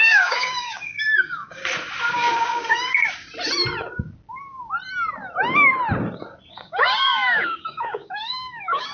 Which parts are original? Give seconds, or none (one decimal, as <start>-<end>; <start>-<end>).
1.6-2.1; 3.0-6.5